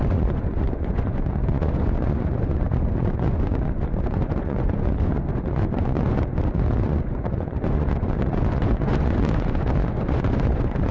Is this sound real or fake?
fake